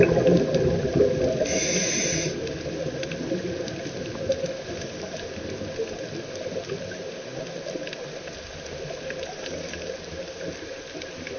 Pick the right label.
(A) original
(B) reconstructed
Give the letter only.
A